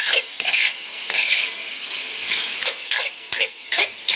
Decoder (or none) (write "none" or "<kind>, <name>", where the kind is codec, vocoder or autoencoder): codec, SNAC